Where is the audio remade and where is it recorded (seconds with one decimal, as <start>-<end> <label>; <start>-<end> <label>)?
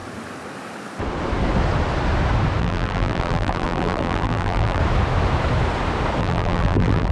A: 0.0-2.6 recorded; 2.6-4.8 remade; 4.8-6.2 recorded; 6.2-7.1 remade